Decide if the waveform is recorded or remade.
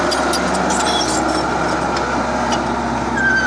recorded